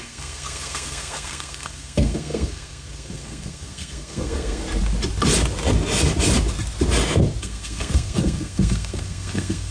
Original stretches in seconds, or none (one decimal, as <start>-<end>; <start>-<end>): 4.6-7.4